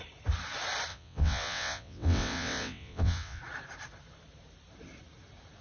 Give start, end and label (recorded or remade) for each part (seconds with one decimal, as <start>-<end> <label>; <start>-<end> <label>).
0.0-0.9 recorded; 0.9-3.4 remade; 3.4-5.6 recorded